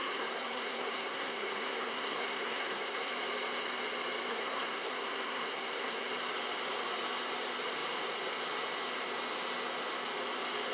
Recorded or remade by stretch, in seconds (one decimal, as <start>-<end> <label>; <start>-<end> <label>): 0.0-3.1 remade; 3.1-4.3 recorded; 4.3-6.1 remade; 6.1-10.7 recorded